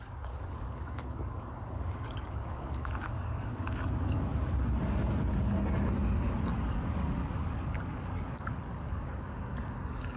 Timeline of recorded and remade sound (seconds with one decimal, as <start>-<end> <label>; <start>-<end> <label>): 0.0-4.3 remade; 4.3-6.7 recorded; 6.7-10.2 remade